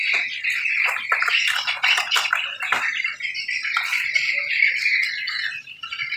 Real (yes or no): yes